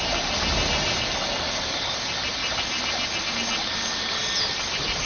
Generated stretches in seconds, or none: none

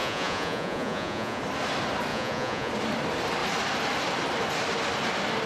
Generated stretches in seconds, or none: 0.0-1.4 (vocoder, Vocos); 2.1-2.7

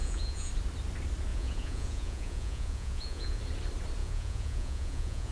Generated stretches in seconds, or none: 0.0-0.5 (vocoder, Vocos); 1.3-3.4; 4.0-5.3